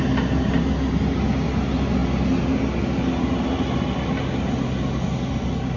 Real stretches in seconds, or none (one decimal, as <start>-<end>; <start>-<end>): 0.0-5.8